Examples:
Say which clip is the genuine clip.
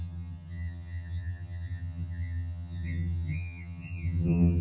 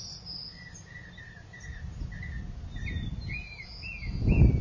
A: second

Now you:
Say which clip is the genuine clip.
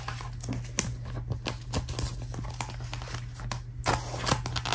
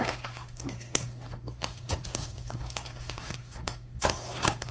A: first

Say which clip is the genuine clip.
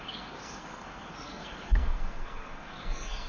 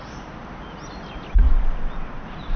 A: second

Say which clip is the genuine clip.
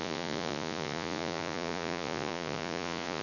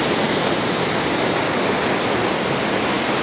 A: second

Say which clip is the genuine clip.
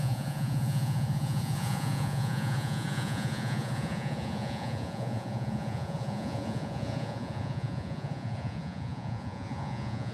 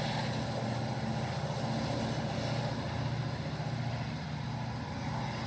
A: second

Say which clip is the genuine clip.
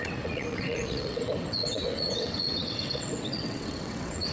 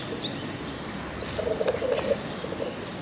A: second